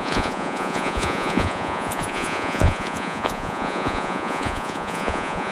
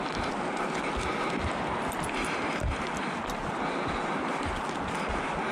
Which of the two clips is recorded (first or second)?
second